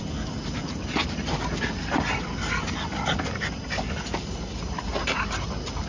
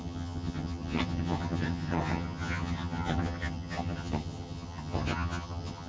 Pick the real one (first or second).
first